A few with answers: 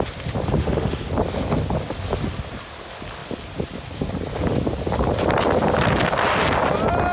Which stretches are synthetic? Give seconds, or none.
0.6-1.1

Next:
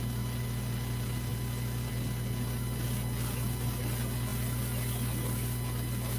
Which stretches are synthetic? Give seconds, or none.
none

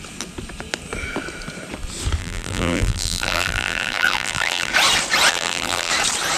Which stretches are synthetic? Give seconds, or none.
2.2-4.7; 5.3-5.9

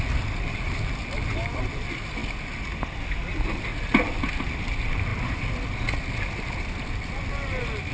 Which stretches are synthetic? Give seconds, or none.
none

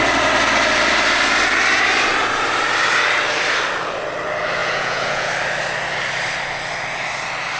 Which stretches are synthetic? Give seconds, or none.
4.6-5.3

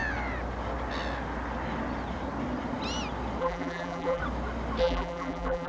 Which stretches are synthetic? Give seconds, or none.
3.4-4.2; 4.8-5.7

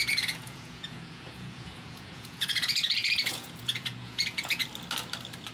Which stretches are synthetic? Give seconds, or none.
0.0-4.6